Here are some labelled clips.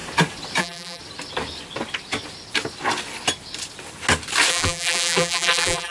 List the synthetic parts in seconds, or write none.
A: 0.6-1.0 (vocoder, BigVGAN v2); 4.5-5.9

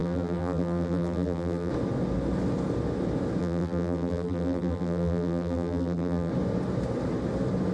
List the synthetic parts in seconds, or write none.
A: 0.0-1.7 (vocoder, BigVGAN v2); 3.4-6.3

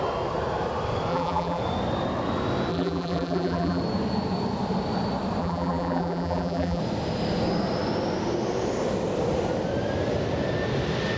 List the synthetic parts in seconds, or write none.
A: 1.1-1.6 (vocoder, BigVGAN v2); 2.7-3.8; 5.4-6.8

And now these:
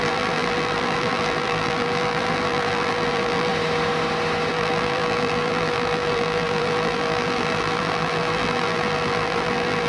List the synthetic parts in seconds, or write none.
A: 0.0-3.5 (vocoder, BigVGAN v2); 4.5-9.9

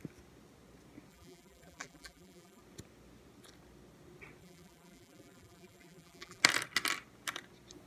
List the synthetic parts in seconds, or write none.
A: 1.1-2.6 (vocoder, BigVGAN v2); 4.4-6.4

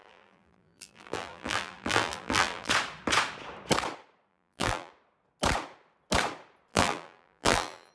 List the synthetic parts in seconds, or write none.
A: 0.0-2.7 (vocoder, BigVGAN v2); 4.3-4.9; 6.7-7.9

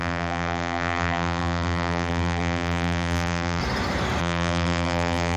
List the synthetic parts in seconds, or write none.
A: 0.0-3.6 (vocoder, BigVGAN v2); 4.2-5.4

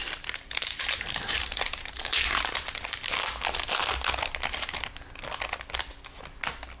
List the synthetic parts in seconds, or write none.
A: 0.0-2.8 (vocoder, BigVGAN v2)